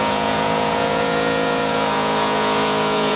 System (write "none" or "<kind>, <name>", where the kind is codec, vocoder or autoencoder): vocoder, Vocos